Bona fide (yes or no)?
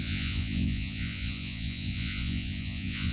no